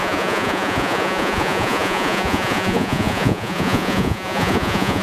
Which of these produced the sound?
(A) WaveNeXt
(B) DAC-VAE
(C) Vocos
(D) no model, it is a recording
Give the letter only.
C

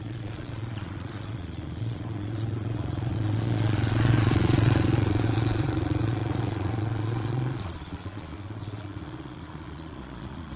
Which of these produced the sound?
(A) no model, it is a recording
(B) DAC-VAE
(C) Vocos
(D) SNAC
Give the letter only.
C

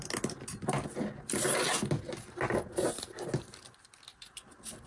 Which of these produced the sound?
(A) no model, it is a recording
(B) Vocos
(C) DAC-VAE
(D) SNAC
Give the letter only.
A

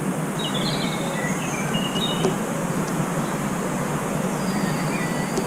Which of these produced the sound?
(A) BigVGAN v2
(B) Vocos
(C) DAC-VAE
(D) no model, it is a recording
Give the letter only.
D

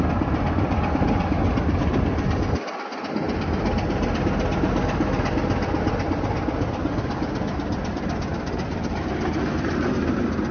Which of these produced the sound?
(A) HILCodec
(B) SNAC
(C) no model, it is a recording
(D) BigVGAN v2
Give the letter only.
C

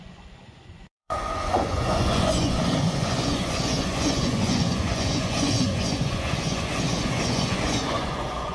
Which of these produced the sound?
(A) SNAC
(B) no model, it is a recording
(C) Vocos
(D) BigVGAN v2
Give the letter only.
C